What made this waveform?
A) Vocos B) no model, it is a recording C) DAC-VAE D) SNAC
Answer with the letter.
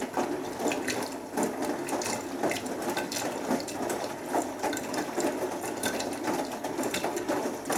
B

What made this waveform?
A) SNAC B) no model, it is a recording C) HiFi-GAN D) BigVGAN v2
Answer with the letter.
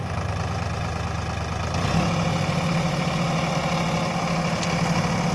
B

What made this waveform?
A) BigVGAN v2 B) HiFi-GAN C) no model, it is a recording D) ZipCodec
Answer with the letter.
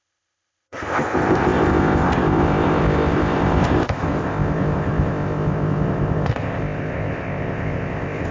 D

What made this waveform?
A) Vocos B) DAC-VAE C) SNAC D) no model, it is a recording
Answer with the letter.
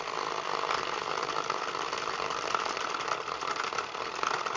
D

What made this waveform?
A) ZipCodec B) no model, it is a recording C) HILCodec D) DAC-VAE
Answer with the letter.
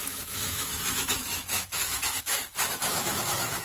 D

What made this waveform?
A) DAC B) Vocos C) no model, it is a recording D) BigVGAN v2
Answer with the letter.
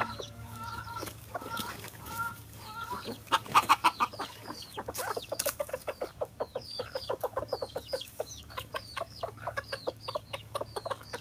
A